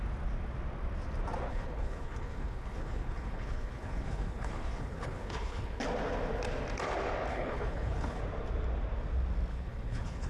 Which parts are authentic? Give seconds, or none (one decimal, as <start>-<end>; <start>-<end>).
0.0-1.5; 5.8-7.3; 8.2-9.5